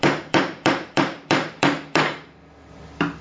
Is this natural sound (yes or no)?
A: no